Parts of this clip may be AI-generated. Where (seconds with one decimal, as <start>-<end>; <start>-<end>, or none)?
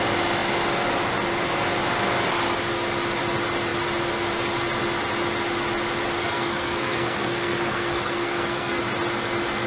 6.2-8.8